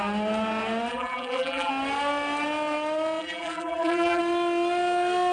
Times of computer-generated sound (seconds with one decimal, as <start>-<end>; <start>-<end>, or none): 0.9-1.7; 3.2-4.2